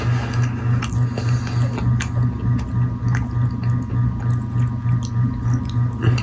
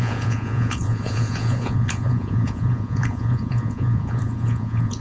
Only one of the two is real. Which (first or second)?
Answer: first